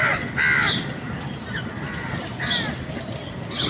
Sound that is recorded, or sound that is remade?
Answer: recorded